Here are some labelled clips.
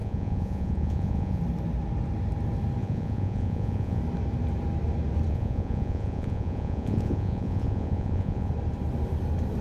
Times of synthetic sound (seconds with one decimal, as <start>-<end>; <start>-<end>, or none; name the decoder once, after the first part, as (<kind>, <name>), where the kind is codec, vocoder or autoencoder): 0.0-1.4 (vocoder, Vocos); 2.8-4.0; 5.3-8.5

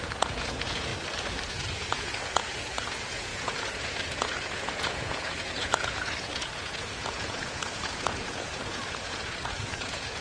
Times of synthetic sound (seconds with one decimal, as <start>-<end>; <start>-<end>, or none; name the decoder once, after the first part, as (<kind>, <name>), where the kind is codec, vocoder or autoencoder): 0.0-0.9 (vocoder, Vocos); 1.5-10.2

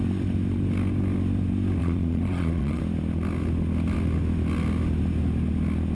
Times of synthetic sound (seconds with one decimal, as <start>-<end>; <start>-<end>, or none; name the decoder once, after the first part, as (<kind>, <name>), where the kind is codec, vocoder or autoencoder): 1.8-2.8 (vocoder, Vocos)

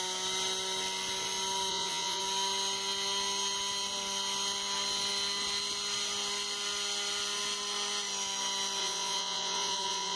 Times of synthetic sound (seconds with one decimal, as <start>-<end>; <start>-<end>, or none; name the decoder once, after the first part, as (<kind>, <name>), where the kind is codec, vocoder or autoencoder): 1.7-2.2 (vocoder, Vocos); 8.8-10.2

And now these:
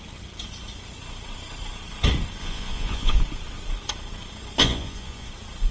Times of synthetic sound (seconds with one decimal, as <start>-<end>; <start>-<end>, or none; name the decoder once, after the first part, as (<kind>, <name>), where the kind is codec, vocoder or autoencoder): 2.4-3.2 (vocoder, Vocos); 4.6-5.3